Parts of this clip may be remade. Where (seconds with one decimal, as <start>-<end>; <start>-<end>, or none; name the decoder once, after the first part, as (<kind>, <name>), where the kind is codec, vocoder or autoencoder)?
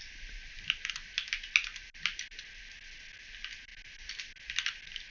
none